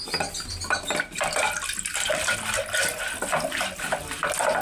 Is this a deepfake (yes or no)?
no